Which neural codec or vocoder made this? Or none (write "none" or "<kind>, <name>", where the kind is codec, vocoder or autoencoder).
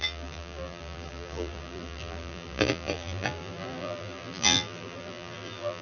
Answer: vocoder, BigVGAN v2